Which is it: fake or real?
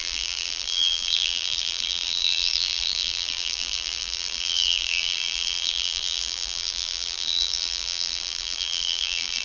fake